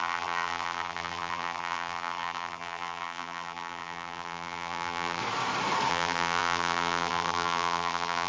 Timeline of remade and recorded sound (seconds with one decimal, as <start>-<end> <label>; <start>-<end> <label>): 0.0-5.2 remade; 5.2-5.9 recorded; 5.9-8.3 remade